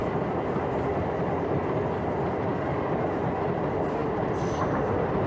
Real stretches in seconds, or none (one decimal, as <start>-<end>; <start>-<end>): 0.0-4.0; 4.6-5.3